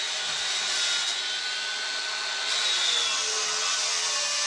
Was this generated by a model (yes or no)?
no